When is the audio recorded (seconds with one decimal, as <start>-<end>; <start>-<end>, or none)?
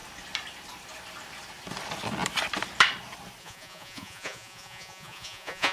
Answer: 0.0-3.4